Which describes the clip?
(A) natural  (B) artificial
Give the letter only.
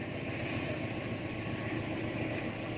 A